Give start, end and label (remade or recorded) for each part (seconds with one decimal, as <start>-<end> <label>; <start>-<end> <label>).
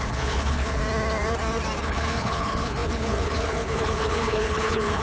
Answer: 0.0-0.8 remade; 0.8-1.8 recorded; 1.8-5.0 remade